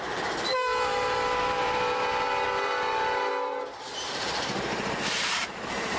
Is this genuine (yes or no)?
no